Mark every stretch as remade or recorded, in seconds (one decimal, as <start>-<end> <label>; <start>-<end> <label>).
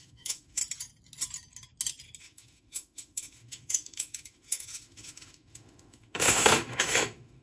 0.0-0.6 remade; 0.6-2.2 recorded; 2.2-7.4 remade